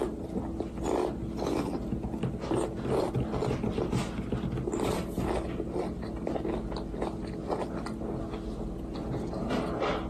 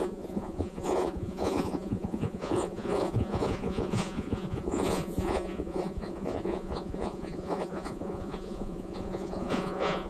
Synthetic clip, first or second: second